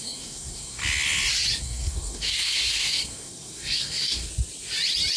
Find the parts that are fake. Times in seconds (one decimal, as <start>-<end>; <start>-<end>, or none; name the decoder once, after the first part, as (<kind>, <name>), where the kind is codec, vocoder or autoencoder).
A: 0.0-0.8 (codec, SNAC); 1.6-4.3